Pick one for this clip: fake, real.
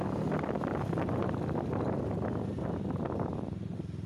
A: real